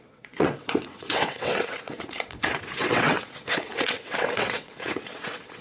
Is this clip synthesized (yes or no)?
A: yes